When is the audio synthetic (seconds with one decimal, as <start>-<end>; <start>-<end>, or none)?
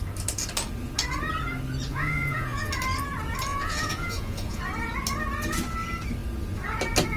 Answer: 1.9-2.7; 3.5-4.6